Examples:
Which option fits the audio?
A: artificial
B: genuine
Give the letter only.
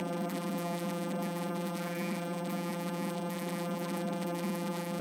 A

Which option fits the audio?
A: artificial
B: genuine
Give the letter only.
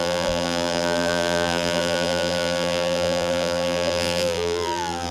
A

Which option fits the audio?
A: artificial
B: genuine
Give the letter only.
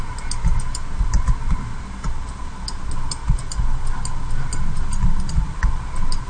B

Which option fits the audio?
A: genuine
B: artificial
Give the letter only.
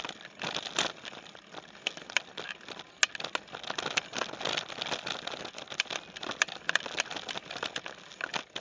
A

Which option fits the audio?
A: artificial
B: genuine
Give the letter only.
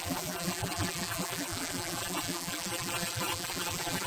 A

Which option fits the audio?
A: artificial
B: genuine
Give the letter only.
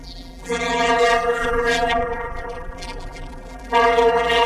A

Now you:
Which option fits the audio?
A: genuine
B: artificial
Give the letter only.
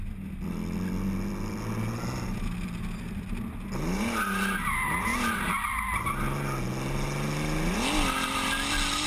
A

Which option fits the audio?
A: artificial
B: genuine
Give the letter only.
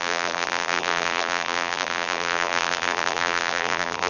A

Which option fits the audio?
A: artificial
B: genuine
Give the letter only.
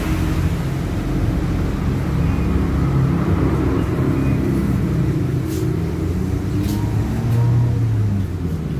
B